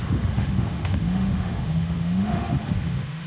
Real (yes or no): no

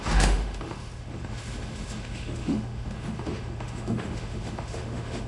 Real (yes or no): no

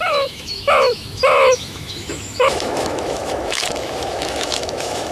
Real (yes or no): no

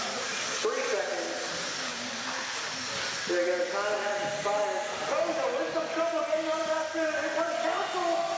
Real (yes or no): yes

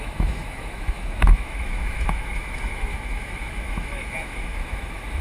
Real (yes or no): no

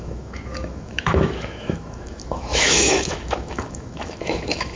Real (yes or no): no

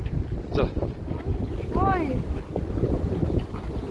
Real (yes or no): yes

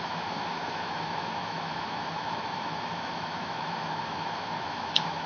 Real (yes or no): no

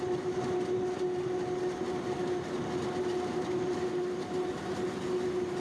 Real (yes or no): yes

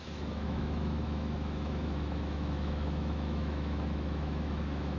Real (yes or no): no